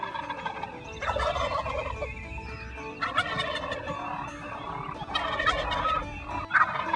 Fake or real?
real